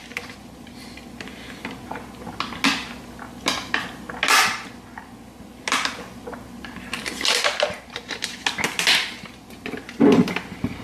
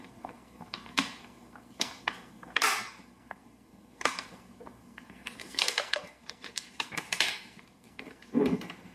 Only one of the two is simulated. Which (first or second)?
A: second